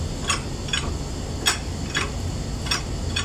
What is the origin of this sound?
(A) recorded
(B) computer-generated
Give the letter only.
A